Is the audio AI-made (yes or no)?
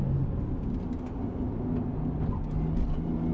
no